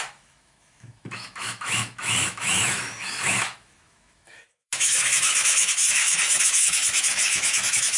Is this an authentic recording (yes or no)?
no